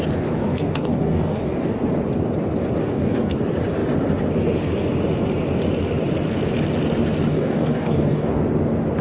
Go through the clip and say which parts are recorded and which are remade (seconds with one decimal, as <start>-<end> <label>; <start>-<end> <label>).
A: 0.0-0.4 recorded; 0.4-1.8 remade; 1.8-2.8 recorded; 2.8-3.4 remade; 3.4-7.3 recorded; 7.3-8.4 remade; 8.4-9.0 recorded